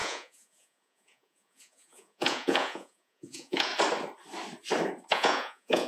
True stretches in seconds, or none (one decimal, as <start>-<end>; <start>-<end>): 3.7-5.1